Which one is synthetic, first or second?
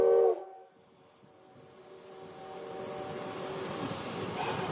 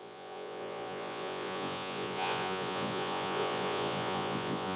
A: second